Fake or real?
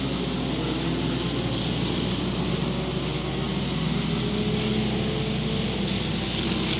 real